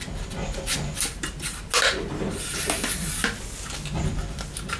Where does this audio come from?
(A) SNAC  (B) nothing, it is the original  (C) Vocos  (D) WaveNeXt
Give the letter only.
B